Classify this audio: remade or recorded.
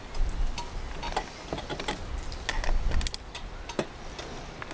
recorded